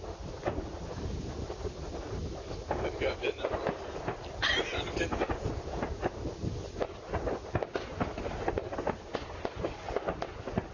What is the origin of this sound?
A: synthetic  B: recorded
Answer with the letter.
B